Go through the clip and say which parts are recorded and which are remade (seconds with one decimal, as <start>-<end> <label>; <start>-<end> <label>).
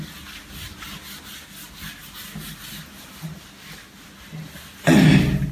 0.0-5.5 recorded